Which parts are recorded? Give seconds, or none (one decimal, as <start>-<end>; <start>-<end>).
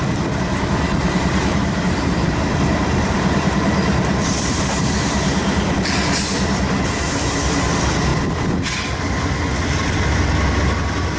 0.0-1.0; 5.7-11.2